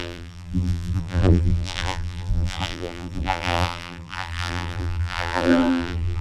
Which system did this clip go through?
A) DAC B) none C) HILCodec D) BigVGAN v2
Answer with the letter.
D